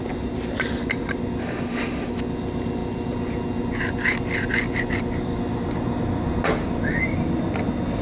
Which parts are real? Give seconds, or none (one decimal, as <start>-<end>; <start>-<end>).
0.0-1.4; 2.1-8.0